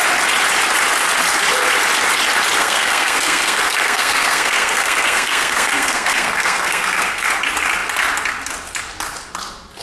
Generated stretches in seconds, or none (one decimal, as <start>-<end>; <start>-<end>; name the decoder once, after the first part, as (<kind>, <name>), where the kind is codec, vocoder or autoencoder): 2.6-7.3 (codec, SNAC)